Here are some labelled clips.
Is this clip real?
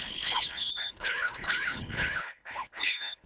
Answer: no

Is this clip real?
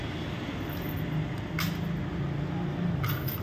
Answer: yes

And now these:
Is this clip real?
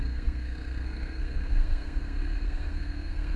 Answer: no